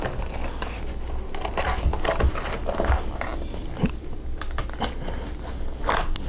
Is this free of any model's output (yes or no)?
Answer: yes